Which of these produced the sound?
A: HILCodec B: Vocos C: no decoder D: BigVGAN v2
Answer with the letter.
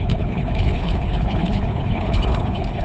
A